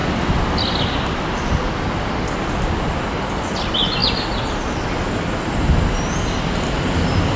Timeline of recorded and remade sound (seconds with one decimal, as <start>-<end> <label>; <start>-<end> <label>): 0.0-7.4 recorded